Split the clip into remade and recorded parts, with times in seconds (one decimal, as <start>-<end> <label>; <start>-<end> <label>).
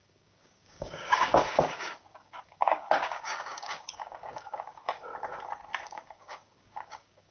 0.0-5.1 remade; 5.1-5.9 recorded; 5.9-7.3 remade